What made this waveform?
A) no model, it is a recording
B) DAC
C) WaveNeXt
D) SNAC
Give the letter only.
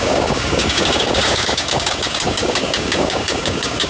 B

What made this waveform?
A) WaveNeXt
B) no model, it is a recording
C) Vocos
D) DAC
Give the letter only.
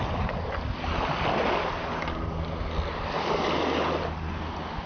B